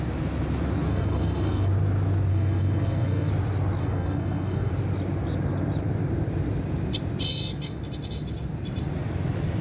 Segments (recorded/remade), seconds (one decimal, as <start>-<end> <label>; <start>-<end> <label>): 0.0-0.9 recorded; 0.9-1.7 remade; 1.7-2.3 recorded; 2.3-3.3 remade; 3.3-3.8 recorded; 3.8-4.7 remade; 4.7-9.6 recorded